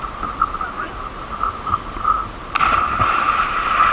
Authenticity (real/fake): real